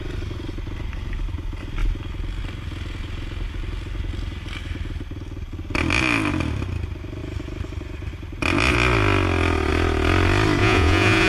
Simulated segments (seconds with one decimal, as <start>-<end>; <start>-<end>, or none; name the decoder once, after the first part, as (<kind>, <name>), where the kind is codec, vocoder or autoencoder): 10.6-11.3 (vocoder, Vocos)